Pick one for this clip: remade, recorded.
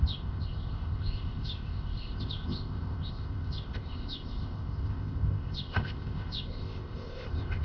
remade